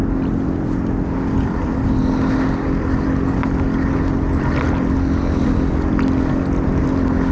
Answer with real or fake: real